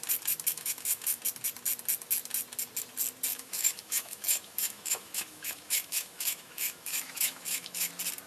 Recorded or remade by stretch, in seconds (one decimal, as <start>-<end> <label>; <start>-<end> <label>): 0.0-0.5 recorded; 0.5-1.2 remade; 1.2-3.3 recorded; 3.3-7.9 remade; 7.9-8.3 recorded